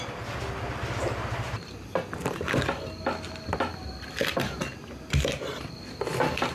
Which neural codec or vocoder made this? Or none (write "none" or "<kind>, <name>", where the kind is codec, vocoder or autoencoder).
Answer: none